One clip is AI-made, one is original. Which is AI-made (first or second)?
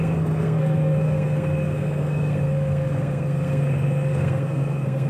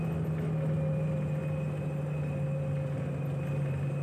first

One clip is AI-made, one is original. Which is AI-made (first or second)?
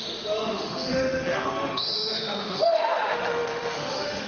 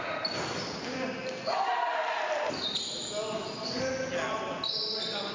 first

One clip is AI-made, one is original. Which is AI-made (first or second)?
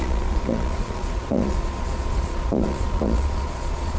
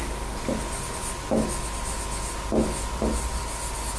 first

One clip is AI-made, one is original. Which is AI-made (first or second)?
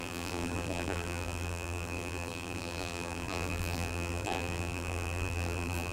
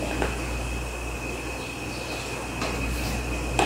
first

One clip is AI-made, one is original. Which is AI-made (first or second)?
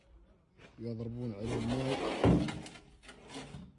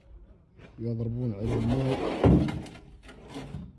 second